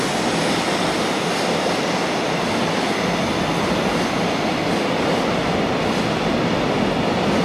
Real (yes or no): yes